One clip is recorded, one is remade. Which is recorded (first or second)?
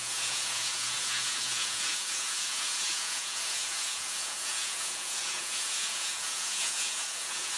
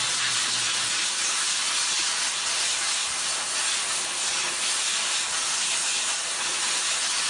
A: second